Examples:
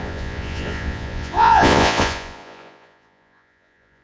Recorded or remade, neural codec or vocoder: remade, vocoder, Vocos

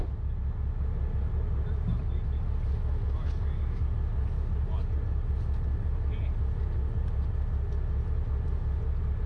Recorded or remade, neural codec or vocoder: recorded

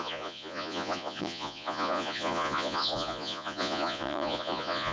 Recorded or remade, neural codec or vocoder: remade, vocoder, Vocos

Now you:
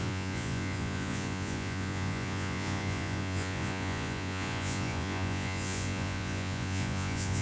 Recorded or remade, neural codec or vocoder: remade, vocoder, Vocos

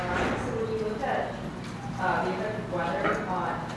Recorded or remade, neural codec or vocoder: recorded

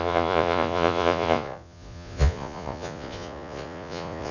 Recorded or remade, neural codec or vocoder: remade, vocoder, Vocos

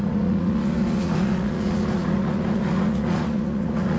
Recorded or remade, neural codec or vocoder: remade, vocoder, Vocos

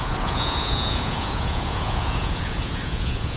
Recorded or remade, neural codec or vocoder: remade, vocoder, Vocos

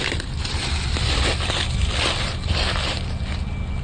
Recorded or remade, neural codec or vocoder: recorded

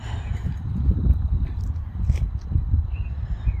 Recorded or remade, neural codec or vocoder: recorded